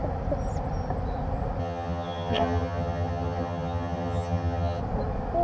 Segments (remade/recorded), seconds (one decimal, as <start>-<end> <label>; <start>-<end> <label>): 0.0-1.6 recorded; 1.6-4.8 remade; 4.8-5.4 recorded